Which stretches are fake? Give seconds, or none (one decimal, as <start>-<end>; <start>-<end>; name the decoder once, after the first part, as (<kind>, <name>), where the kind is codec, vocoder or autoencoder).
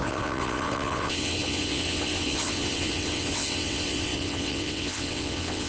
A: 0.0-5.7 (vocoder, WaveNeXt)